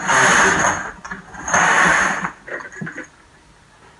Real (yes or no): yes